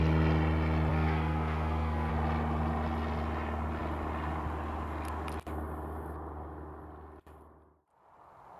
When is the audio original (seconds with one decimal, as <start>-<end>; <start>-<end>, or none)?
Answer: 0.0-0.9; 2.1-8.6